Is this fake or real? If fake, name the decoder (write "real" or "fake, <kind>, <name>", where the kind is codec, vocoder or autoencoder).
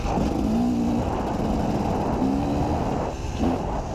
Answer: real